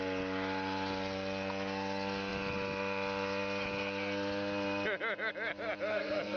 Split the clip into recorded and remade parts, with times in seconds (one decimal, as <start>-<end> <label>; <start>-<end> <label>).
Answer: 0.0-5.9 recorded; 5.9-6.4 remade